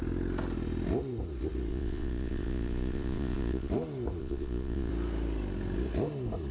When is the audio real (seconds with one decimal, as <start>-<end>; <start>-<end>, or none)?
0.0-1.7; 3.7-4.2; 4.9-6.5